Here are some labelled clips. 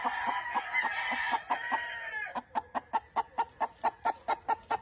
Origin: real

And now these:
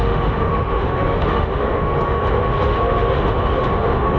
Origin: fake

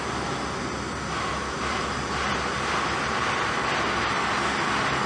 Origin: real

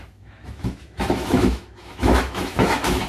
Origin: fake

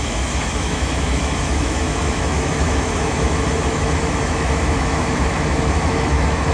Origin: fake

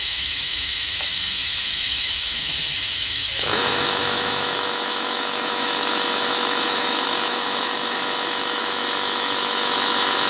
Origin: fake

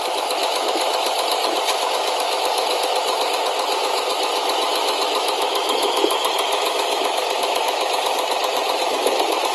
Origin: fake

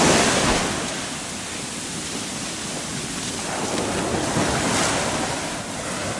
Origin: real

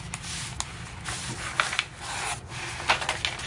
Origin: real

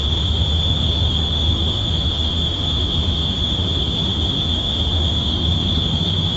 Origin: fake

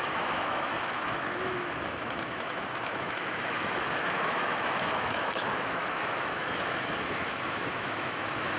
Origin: fake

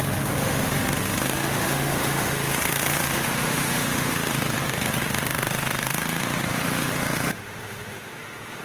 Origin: fake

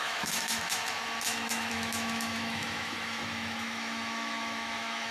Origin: fake